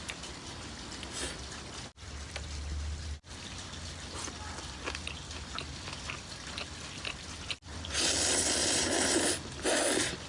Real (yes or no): yes